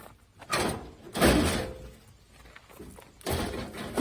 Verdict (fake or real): real